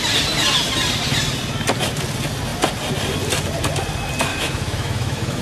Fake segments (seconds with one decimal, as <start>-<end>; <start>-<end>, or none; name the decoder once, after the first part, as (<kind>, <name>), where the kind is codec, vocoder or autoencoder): 4.3-5.4 (autoencoder, DAC-VAE)